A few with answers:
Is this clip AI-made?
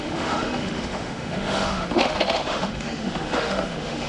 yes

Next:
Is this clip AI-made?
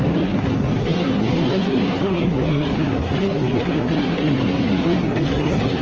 yes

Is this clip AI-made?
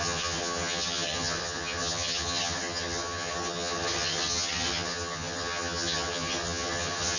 yes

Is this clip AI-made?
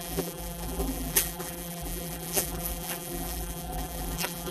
yes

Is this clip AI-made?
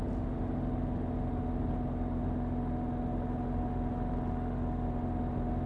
no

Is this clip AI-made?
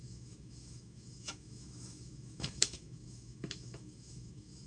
yes